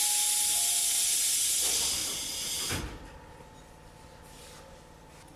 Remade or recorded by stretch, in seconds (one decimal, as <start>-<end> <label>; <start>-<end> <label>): 0.0-5.4 recorded